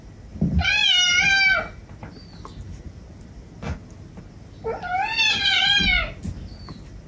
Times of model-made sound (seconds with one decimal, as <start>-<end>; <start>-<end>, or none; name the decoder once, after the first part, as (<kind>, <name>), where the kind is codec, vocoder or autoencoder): none